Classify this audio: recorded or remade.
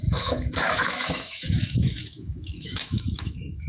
remade